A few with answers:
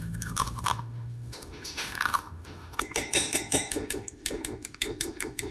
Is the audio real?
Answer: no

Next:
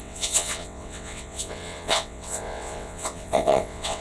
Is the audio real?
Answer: no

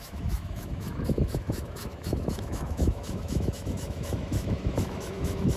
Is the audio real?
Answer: no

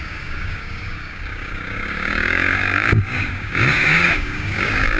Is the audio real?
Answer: no